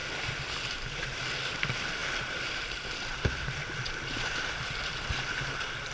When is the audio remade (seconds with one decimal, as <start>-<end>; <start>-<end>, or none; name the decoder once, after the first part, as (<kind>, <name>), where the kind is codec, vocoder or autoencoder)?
1.3-5.9 (vocoder, BigVGAN v2)